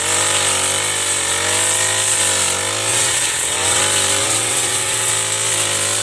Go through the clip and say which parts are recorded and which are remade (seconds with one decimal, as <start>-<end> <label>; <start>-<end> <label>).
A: 0.0-2.9 recorded; 2.9-3.8 remade; 3.8-4.2 recorded; 4.2-5.1 remade; 5.1-6.0 recorded